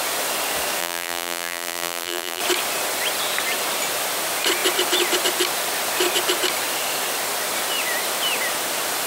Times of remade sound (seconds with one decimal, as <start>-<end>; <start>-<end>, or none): 0.8-2.4